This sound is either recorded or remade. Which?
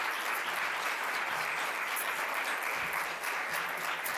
remade